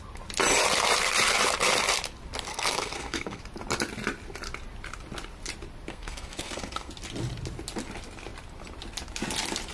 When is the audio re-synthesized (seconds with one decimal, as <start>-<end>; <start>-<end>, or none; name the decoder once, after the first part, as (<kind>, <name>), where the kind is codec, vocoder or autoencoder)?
2.5-3.4 (codec, SNAC); 5.9-6.9